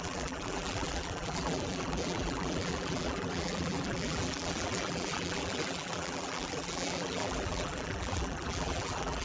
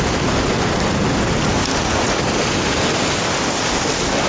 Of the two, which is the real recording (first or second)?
second